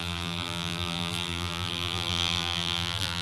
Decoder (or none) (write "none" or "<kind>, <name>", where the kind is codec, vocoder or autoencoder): vocoder, BigVGAN v2